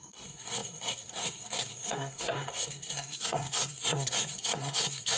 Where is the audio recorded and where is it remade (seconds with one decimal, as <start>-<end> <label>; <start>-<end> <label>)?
0.0-5.2 remade